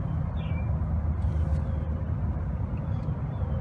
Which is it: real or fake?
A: real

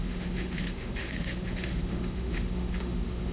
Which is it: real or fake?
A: fake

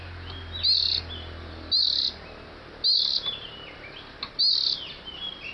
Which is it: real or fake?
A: real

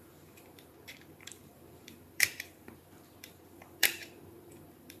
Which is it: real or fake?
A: fake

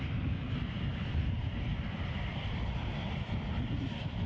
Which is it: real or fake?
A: fake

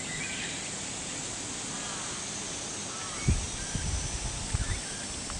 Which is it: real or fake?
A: real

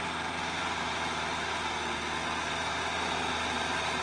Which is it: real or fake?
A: real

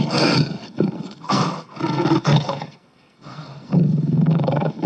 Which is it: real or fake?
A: fake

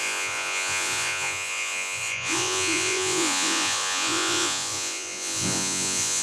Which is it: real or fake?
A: fake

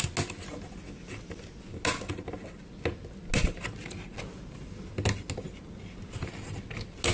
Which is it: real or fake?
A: real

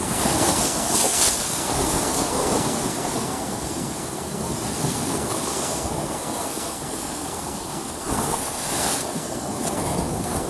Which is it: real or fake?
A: fake